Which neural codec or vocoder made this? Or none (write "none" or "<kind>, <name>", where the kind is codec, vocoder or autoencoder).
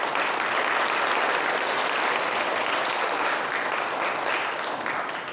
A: vocoder, BigVGAN v2